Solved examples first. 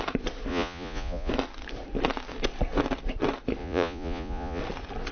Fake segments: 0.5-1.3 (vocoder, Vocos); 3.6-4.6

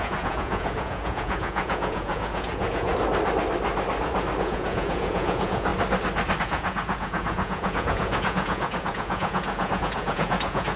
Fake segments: 0.0-2.9 (vocoder, Vocos); 4.4-5.7; 6.4-10.8

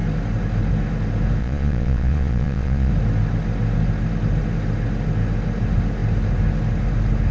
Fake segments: 1.4-2.9 (vocoder, Vocos)

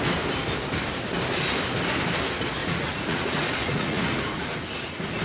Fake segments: 2.6-5.2 (vocoder, Vocos)